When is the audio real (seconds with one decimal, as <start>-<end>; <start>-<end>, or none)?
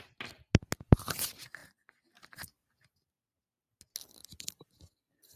0.0-1.6; 3.8-4.2